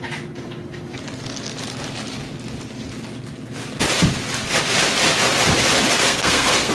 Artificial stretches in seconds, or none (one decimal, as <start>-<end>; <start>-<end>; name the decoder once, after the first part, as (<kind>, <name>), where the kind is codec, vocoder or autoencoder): 6.0-6.7 (codec, SNAC)